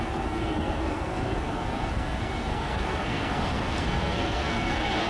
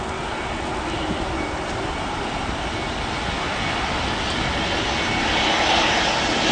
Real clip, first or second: second